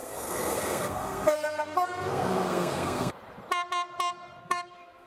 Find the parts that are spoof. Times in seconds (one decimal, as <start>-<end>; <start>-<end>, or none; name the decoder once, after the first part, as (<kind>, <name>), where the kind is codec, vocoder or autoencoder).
0.0-3.1 (codec, SNAC); 4.4-5.1